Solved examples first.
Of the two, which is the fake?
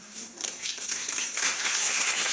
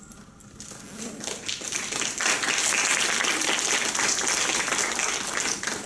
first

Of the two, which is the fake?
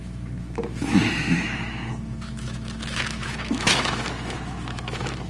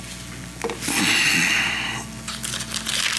first